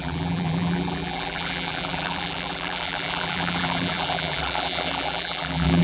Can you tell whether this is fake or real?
fake